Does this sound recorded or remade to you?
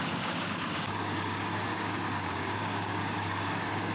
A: remade